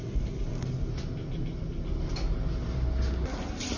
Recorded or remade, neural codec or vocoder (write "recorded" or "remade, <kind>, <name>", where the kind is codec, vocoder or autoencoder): recorded